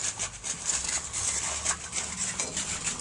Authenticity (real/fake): real